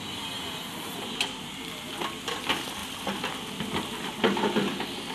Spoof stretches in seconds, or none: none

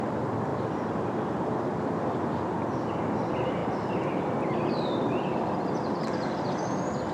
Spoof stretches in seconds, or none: 0.0-0.5 (vocoder, BigVGAN v2); 2.9-3.6; 4.7-7.1

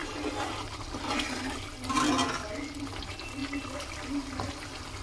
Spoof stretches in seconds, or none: none

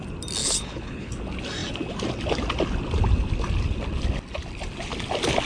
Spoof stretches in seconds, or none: 0.4-1.1 (codec, HILCodec)

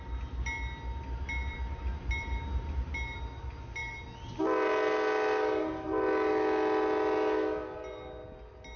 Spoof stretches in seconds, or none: none

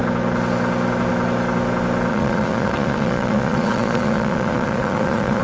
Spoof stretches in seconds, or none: 2.1-5.4 (vocoder, Vocos)

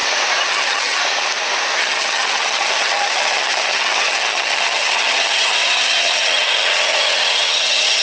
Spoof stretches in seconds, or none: 0.5-1.0 (vocoder, HiFi-GAN); 1.8-8.0

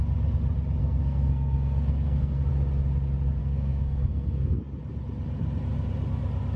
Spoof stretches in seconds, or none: 0.8-2.5 (codec, SNAC); 3.4-4.6